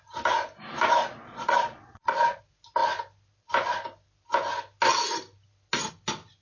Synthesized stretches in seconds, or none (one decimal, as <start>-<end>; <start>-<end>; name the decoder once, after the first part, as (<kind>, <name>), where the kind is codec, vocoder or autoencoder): 1.0-2.4 (vocoder, Vocos)